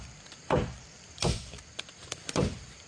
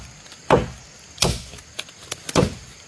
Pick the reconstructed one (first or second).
first